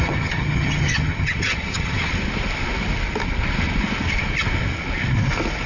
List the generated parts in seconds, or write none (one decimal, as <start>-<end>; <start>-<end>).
0.0-2.1